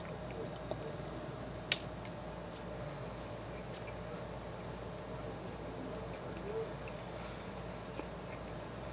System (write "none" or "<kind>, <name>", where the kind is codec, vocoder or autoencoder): none